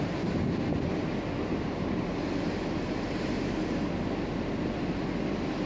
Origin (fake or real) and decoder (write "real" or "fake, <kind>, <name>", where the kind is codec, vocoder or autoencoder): real